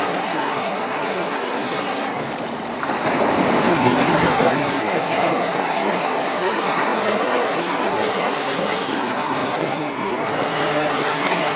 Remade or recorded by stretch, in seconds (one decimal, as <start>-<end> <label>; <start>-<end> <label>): 0.0-2.2 remade; 2.2-3.7 recorded; 3.7-11.6 remade